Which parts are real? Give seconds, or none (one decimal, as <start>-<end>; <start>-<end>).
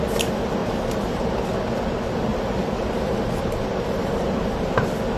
0.0-0.6; 1.4-2.3; 4.7-5.2